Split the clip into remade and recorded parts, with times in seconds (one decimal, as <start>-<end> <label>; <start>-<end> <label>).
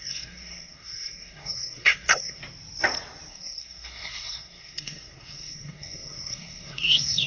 0.0-2.4 remade; 2.4-3.3 recorded; 3.3-7.3 remade